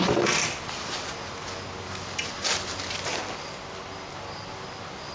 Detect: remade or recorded recorded